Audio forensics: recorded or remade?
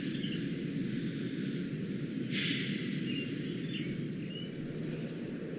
recorded